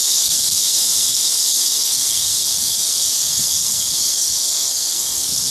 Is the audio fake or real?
fake